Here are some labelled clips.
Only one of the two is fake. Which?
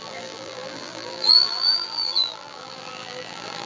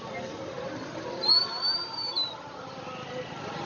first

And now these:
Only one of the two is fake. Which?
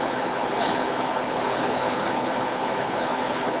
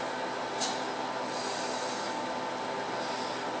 first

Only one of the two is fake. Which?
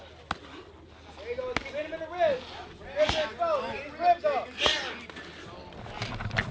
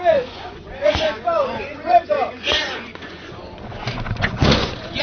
second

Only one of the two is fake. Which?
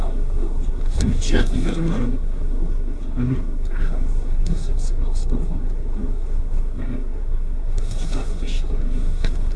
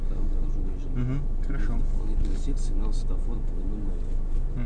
first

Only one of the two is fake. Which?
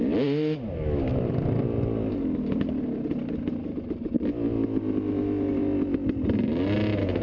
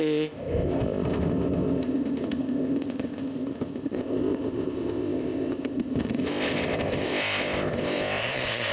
second